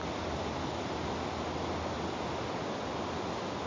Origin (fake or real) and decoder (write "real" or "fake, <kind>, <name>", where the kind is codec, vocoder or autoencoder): real